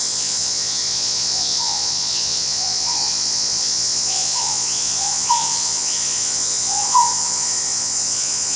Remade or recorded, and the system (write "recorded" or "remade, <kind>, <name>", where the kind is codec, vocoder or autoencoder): remade, vocoder, Vocos